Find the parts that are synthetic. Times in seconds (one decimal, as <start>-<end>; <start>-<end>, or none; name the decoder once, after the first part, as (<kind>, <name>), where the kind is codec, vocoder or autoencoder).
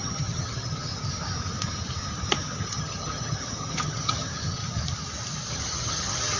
0.0-0.9 (vocoder, HiFi-GAN); 2.8-4.6; 5.5-6.4